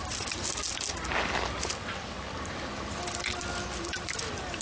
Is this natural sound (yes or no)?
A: yes